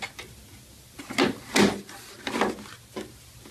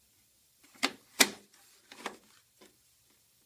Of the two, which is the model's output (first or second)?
second